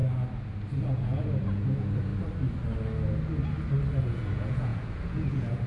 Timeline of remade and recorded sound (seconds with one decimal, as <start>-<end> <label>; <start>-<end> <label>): 0.0-0.8 recorded; 0.8-2.1 remade; 2.1-4.0 recorded; 4.0-5.7 remade